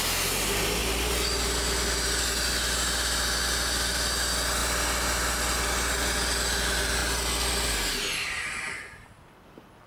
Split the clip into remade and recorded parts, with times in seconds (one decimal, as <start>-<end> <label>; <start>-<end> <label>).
0.0-9.9 recorded